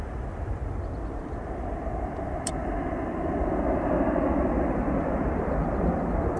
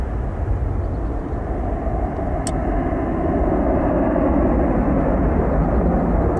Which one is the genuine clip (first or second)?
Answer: second